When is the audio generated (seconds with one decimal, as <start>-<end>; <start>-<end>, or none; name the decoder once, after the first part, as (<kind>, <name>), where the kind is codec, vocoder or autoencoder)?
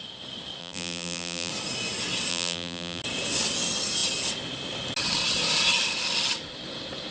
0.6-1.5 (vocoder, BigVGAN v2); 2.3-3.0